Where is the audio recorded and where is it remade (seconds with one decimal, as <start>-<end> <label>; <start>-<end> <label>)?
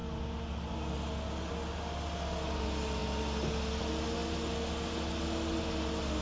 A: 0.0-6.2 recorded